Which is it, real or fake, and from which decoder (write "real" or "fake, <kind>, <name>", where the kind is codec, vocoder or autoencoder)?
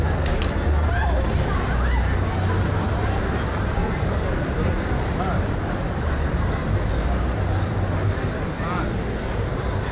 real